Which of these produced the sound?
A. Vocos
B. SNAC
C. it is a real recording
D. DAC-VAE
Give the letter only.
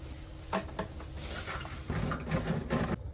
C